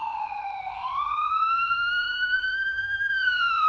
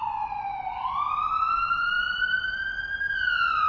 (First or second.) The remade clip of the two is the first